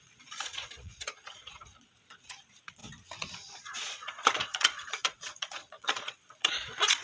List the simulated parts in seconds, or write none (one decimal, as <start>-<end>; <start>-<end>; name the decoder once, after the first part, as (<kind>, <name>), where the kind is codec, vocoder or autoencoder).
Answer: 0.0-2.8 (vocoder, Vocos); 3.3-7.0